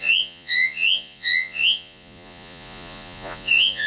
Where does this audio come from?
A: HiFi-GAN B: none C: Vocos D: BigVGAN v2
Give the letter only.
C